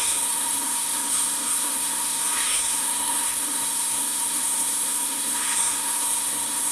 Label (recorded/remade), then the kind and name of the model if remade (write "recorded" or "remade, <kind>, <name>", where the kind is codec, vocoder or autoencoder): remade, codec, SNAC